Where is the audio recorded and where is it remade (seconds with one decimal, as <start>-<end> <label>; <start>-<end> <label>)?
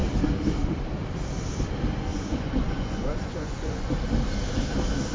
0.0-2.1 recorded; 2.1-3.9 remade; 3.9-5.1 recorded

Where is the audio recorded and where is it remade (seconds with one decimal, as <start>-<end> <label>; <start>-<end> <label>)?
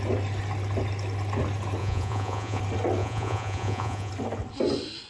0.0-1.8 recorded; 1.8-2.6 remade; 2.6-3.0 recorded; 3.0-4.1 remade; 4.1-5.1 recorded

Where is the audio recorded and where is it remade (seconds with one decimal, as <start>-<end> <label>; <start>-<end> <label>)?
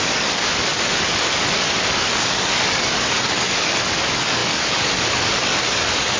0.0-6.2 remade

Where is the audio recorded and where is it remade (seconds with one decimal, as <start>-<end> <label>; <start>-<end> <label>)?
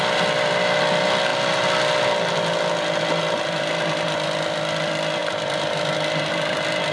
0.0-6.9 recorded